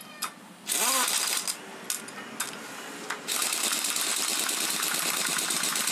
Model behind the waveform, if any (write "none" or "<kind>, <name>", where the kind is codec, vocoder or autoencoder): none